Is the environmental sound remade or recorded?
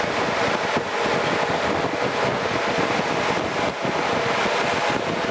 recorded